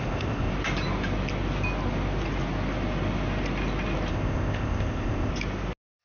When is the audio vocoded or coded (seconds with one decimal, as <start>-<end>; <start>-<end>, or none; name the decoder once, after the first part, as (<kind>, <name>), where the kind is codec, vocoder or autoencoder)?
0.0-0.5 (codec, ZipCodec); 4.1-5.3